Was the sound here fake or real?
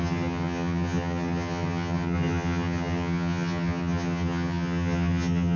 fake